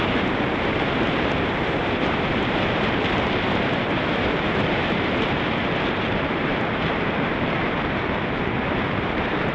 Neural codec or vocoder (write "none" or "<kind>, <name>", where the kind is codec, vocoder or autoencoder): vocoder, BigVGAN v2